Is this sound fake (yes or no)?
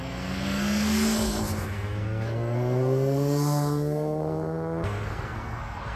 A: yes